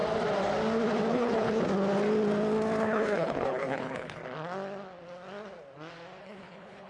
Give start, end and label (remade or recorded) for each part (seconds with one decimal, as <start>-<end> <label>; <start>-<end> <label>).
0.0-1.1 recorded; 1.1-1.6 remade; 1.6-2.8 recorded; 2.8-4.2 remade; 4.2-6.2 recorded; 6.2-6.9 remade

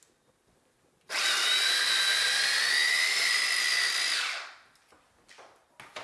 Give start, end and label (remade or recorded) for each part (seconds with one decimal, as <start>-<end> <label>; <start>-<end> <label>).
0.0-6.0 recorded

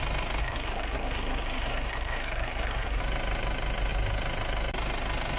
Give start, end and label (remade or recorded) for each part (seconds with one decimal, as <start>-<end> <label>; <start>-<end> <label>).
0.0-0.4 recorded; 0.4-3.0 remade; 3.0-5.4 recorded

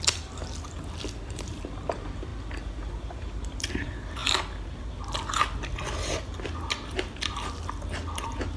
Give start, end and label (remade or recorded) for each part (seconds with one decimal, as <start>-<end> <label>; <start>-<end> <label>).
0.0-4.2 remade; 4.2-7.3 recorded; 7.3-8.6 remade

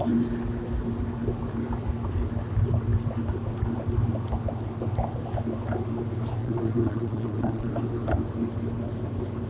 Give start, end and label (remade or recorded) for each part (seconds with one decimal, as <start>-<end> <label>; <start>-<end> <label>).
0.0-6.4 recorded; 6.4-7.7 remade; 7.7-9.5 recorded